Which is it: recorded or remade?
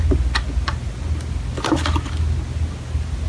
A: recorded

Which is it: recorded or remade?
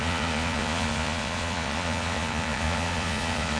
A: remade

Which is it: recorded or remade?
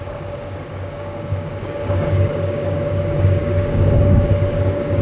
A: remade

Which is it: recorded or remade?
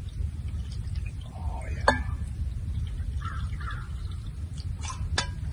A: recorded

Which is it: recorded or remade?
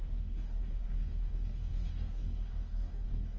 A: remade